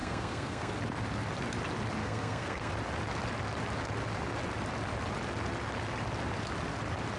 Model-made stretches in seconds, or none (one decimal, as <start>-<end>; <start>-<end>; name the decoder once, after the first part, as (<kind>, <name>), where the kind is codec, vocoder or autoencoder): 0.0-0.7 (codec, SNAC); 2.0-2.7